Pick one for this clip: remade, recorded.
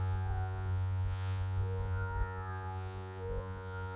remade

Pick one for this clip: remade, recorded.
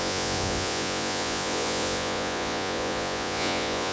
remade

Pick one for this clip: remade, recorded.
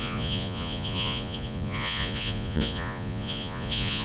remade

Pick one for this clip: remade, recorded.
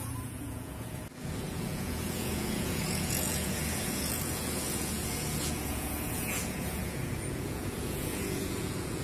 remade